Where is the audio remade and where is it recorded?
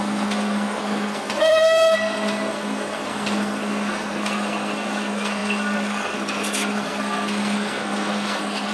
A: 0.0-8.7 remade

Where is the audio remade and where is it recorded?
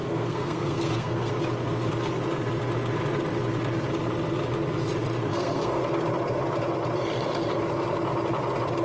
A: 0.0-1.3 remade; 1.3-5.3 recorded; 5.3-5.8 remade; 5.8-8.8 recorded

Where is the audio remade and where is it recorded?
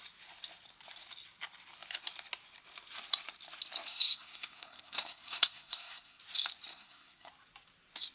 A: 0.0-3.9 recorded; 3.9-6.2 remade; 6.2-6.7 recorded; 6.7-7.3 remade; 7.3-8.1 recorded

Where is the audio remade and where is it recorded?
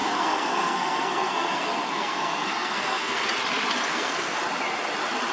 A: 0.0-3.2 remade; 3.2-3.9 recorded; 3.9-4.4 remade; 4.4-5.3 recorded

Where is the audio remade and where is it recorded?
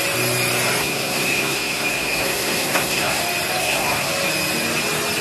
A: 0.0-0.8 recorded; 0.8-3.2 remade; 3.2-3.6 recorded; 3.6-4.1 remade; 4.1-5.2 recorded